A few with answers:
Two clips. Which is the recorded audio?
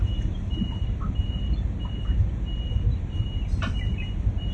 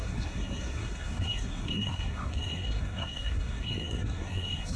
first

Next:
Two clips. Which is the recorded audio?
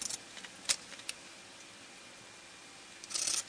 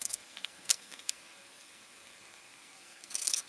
first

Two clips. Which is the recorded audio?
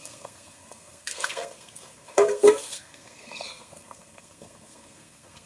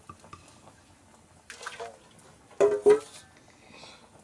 second